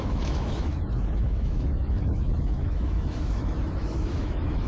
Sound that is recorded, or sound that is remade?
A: remade